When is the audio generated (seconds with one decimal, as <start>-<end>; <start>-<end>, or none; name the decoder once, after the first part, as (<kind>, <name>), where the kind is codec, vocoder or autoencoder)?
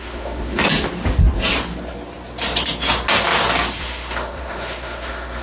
0.0-0.6 (autoencoder, DAC-VAE); 3.8-5.4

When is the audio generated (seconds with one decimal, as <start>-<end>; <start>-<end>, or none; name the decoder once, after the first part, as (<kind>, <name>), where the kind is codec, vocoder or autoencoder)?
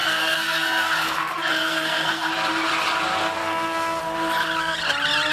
0.0-2.3 (codec, SNAC); 3.4-4.0